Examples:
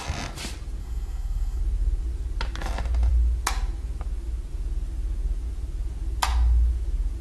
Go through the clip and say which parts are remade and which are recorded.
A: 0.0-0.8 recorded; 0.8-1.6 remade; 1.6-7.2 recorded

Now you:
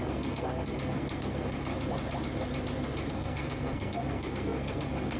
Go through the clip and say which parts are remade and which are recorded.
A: 0.0-1.7 remade; 1.7-3.1 recorded; 3.1-5.2 remade

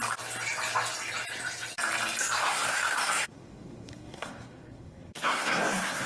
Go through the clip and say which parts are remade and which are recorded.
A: 0.0-2.2 recorded; 2.2-6.1 remade